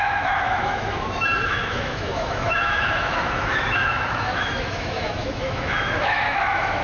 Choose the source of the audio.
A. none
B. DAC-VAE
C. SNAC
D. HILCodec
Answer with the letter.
B